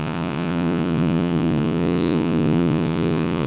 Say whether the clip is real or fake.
fake